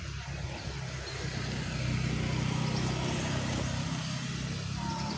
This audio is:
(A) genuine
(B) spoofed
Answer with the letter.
A